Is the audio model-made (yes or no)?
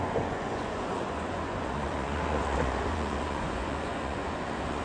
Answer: yes